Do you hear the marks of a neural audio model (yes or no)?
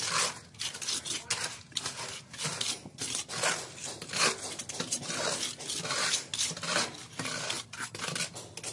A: no